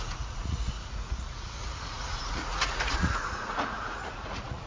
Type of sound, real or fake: fake